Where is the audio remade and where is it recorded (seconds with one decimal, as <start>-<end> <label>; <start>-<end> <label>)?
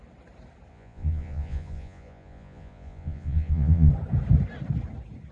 0.0-0.7 recorded; 0.7-3.9 remade; 3.9-5.3 recorded